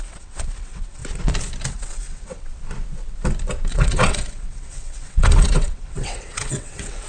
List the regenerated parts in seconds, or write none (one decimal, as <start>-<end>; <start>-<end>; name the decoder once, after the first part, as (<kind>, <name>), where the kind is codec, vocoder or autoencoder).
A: 0.0-1.0 (vocoder, WaveNeXt); 1.7-2.5; 3.7-7.1